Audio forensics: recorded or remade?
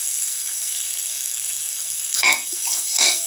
remade